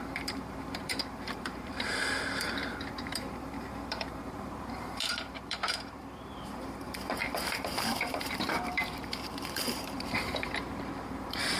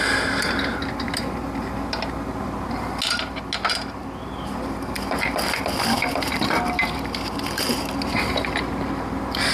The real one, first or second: second